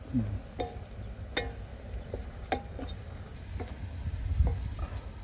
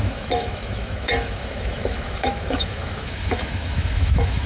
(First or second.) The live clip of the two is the first